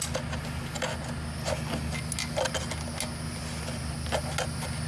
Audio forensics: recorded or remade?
recorded